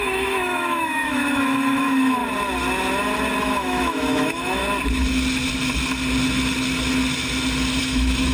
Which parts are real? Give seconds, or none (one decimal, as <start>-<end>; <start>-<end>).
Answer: 2.2-3.4; 4.6-7.8